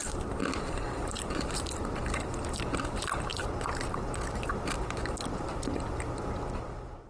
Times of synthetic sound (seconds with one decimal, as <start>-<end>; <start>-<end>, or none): 0.0-7.1